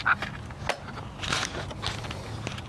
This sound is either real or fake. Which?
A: real